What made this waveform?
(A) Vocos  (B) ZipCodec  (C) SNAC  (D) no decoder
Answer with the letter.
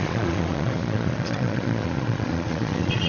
A